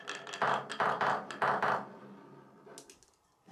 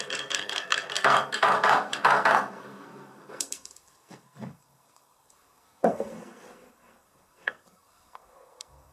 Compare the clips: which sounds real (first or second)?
first